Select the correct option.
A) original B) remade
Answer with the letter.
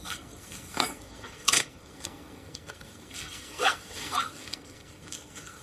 B